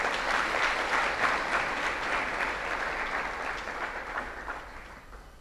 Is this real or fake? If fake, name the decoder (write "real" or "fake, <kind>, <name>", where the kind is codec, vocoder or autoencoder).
real